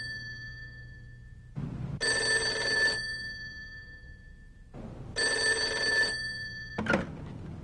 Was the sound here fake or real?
real